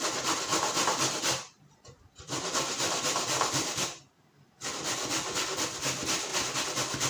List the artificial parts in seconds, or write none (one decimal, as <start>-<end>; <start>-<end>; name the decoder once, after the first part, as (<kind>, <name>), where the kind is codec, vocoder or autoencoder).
0.5-4.8 (vocoder, BigVGAN v2); 6.3-7.1